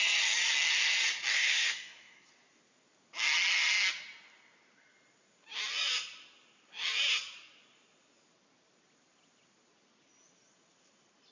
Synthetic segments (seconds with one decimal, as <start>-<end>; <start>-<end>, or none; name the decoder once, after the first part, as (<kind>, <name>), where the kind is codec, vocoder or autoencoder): 1.3-2.3 (codec, SNAC)